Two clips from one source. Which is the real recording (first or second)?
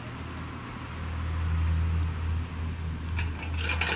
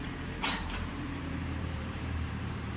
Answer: first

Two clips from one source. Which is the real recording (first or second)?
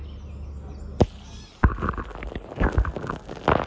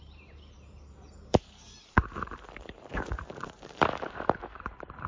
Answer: first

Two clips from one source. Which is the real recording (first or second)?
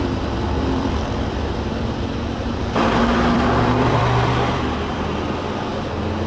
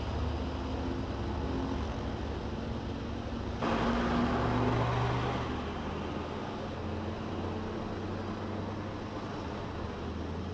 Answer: second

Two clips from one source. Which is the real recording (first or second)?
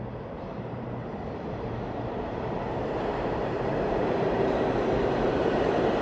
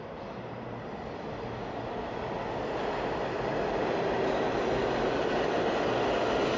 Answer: second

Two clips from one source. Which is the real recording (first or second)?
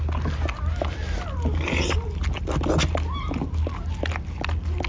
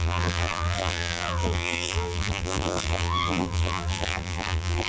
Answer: first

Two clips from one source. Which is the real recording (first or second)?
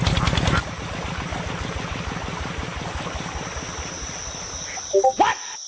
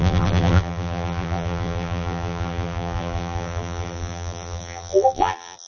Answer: first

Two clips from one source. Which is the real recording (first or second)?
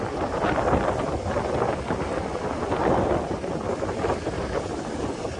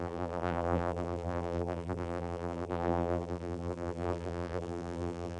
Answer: first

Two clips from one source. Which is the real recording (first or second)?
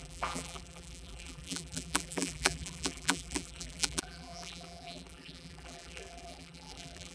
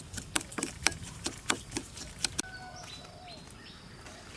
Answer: second